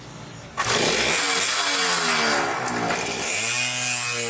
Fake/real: real